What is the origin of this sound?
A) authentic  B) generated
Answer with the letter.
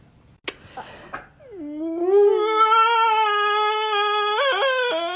A